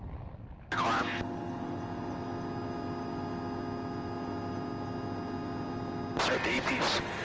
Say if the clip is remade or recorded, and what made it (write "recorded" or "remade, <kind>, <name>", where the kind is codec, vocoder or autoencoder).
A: recorded